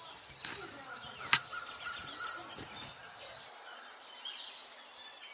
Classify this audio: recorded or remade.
recorded